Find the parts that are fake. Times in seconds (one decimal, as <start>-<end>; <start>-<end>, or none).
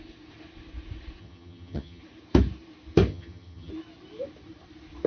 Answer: 1.2-2.0; 3.1-3.7